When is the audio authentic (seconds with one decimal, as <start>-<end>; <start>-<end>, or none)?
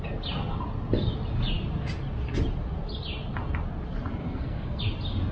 0.0-4.2; 4.8-5.3